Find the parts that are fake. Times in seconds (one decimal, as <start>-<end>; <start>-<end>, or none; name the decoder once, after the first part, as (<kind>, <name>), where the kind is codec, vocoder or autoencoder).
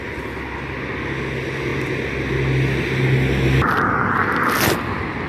none